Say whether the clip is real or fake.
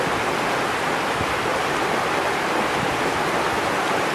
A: real